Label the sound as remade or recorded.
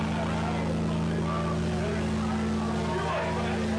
recorded